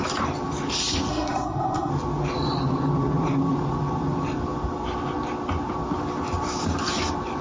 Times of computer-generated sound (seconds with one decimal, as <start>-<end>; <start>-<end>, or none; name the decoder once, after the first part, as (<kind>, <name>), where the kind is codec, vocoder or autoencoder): 1.1-1.9 (codec, SNAC)